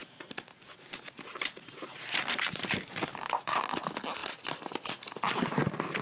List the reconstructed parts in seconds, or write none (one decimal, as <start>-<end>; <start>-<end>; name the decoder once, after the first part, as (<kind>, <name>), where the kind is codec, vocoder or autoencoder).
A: 0.0-3.6 (vocoder, BigVGAN v2)